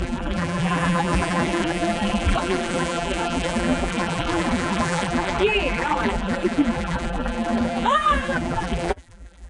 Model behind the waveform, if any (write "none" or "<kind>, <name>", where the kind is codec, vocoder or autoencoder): vocoder, BigVGAN v2